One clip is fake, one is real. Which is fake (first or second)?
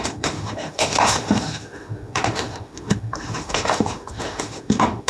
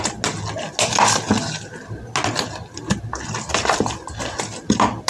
first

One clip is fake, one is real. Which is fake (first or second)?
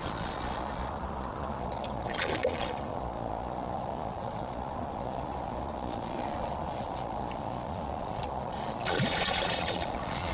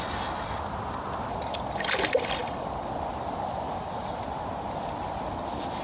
first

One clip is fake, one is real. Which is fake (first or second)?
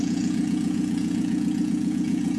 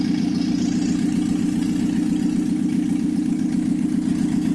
first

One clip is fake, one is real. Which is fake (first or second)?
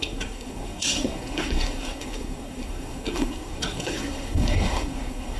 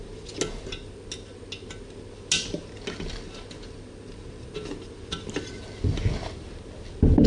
first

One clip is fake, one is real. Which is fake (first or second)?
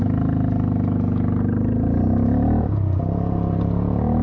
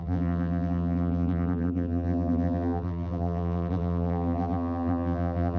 second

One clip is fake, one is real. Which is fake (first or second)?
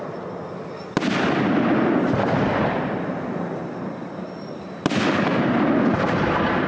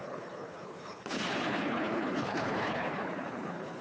second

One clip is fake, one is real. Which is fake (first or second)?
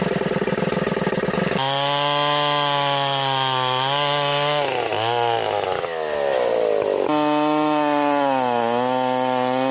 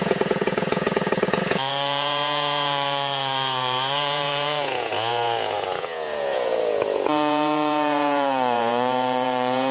second